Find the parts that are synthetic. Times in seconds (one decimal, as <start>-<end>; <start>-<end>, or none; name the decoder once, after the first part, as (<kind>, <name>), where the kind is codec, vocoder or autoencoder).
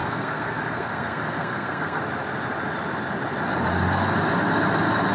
0.0-2.0 (codec, SNAC)